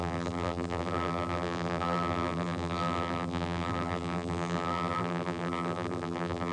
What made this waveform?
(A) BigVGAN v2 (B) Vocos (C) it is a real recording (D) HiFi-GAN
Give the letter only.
A